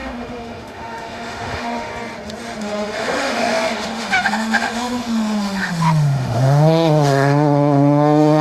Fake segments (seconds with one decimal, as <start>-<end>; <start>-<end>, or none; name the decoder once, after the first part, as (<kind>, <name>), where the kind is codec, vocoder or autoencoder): 0.0-1.9 (autoencoder, DAC-VAE); 2.6-8.4